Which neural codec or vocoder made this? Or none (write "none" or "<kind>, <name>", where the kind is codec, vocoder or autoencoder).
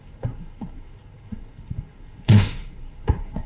codec, SNAC